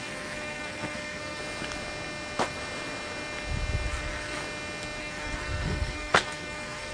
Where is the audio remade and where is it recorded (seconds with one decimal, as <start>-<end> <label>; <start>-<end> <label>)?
0.0-1.4 remade; 1.4-3.9 recorded; 3.9-4.4 remade; 4.4-5.0 recorded; 5.0-6.9 remade